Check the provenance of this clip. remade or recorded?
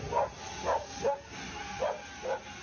recorded